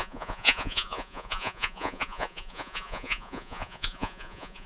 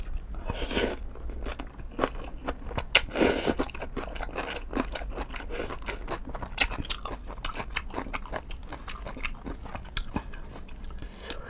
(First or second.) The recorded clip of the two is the second